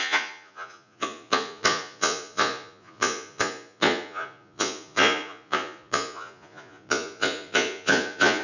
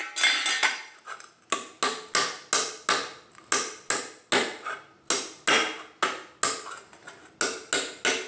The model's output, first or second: first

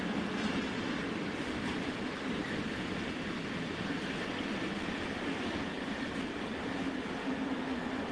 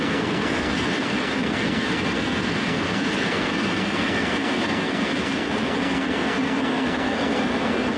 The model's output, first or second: second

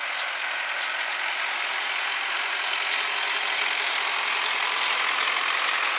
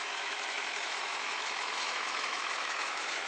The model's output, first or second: second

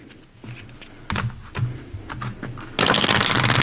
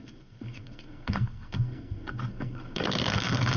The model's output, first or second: second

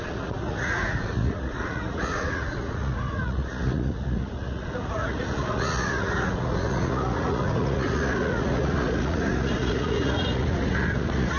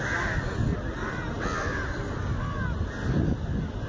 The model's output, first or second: first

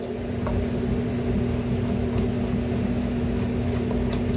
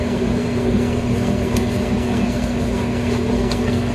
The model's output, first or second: second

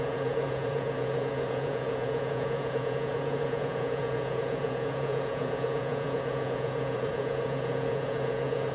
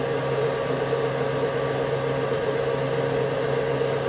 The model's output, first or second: first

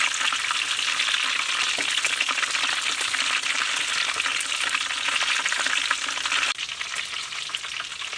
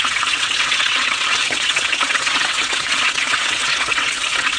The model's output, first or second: second